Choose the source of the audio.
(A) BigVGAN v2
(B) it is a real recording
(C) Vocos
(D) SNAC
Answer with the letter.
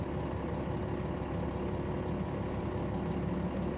B